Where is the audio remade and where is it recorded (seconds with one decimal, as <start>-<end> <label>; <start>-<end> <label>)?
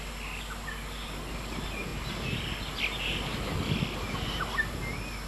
0.0-5.3 recorded